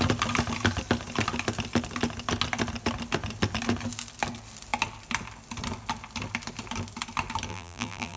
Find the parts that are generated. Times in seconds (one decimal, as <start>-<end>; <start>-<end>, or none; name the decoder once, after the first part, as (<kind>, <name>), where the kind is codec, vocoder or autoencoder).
7.5-8.2 (vocoder, BigVGAN v2)